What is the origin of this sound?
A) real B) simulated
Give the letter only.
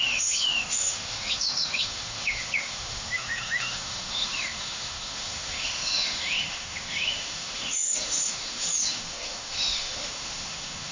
B